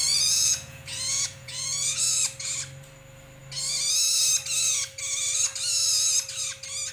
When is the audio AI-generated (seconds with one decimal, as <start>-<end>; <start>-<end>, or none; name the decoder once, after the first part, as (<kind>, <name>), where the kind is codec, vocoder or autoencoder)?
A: 0.0-2.0 (vocoder, Vocos)

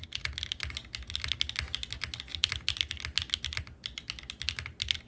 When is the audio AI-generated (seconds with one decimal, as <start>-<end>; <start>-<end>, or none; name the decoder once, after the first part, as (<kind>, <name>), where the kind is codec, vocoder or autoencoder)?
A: none